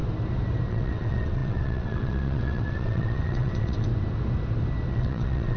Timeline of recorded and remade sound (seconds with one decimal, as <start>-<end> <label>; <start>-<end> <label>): 0.0-0.7 recorded; 0.7-3.9 remade; 3.9-4.9 recorded; 4.9-5.6 remade